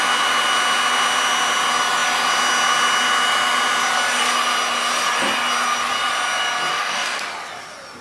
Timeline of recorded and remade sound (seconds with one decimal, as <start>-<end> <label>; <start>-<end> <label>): 0.0-6.7 recorded; 6.7-7.2 remade; 7.2-8.0 recorded